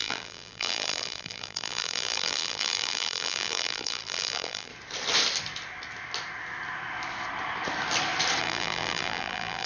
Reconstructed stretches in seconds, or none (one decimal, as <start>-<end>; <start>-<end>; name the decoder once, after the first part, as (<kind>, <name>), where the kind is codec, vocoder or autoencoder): 0.0-4.7 (vocoder, BigVGAN v2); 8.4-9.7